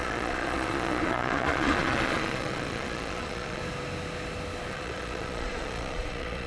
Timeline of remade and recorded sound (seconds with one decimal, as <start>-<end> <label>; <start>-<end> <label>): 0.0-3.6 remade; 3.6-4.7 recorded; 4.7-6.5 remade